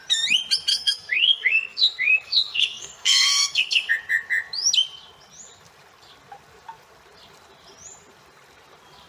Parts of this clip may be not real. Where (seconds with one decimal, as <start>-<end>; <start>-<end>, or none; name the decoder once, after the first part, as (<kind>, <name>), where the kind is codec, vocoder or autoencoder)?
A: 0.7-3.9 (codec, SNAC)